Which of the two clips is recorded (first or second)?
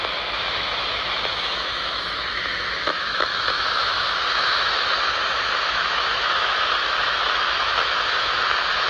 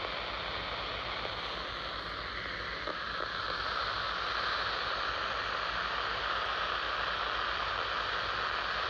second